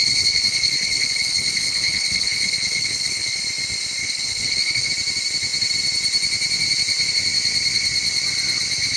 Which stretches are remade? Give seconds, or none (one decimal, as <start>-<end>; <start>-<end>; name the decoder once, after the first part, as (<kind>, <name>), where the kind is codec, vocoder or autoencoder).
0.0-3.4 (codec, HILCodec); 4.0-4.9